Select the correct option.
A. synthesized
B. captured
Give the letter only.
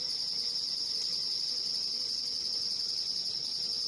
B